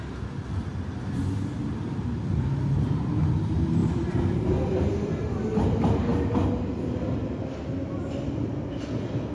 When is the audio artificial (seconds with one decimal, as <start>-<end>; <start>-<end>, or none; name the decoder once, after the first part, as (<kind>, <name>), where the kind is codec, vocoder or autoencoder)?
3.8-5.2 (vocoder, BigVGAN v2)